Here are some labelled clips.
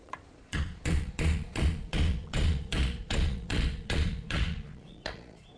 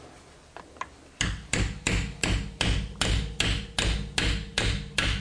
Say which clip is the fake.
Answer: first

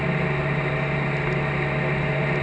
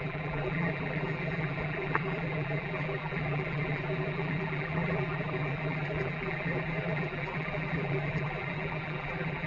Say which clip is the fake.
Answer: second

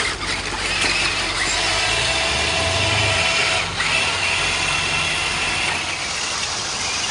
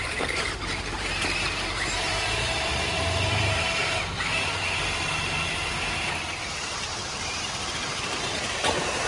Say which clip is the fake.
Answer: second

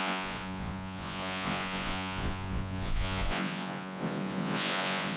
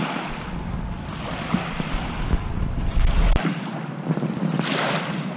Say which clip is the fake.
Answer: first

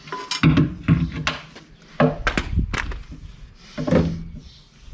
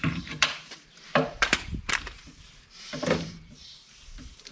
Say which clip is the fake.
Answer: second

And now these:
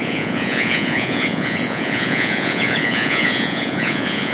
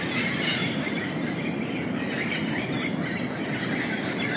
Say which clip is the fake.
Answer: first